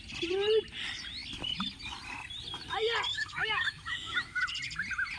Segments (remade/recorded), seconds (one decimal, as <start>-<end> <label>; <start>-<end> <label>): 0.0-3.1 recorded; 3.1-4.4 remade; 4.4-5.2 recorded